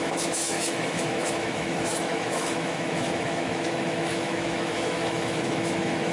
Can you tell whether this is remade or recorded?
remade